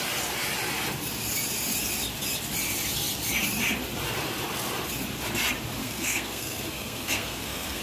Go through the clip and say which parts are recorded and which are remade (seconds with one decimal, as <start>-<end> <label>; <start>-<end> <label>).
0.0-5.8 recorded; 5.8-7.8 remade